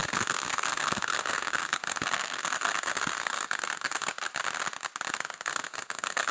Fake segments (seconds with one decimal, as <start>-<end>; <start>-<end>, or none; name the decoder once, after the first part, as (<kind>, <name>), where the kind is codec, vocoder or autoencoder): 0.0-4.3 (codec, SNAC); 5.1-6.3